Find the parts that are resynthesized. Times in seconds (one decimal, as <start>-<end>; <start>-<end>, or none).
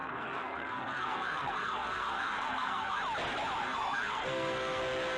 0.0-3.0; 3.6-4.8